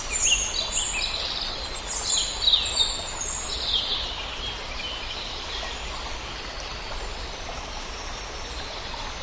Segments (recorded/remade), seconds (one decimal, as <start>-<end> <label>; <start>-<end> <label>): 0.0-9.2 recorded